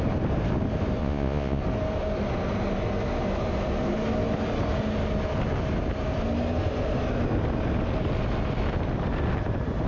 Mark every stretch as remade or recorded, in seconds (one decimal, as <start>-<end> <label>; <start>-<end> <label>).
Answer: 0.0-1.0 recorded; 1.0-1.6 remade; 1.6-9.9 recorded